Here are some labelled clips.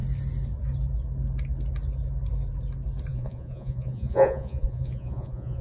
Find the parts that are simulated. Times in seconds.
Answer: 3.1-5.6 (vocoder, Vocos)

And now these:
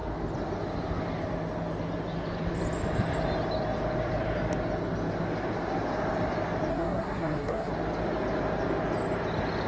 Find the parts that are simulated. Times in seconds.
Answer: 6.7-7.7 (codec, SNAC)